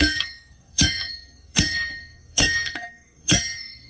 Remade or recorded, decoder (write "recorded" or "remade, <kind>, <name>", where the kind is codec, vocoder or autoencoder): remade, codec, SNAC